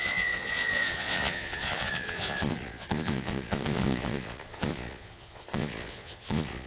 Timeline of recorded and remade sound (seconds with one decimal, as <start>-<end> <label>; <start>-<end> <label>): 0.0-6.7 remade

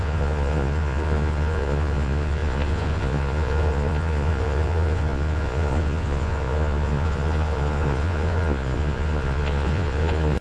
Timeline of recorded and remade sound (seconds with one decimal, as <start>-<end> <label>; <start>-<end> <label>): 0.0-10.4 remade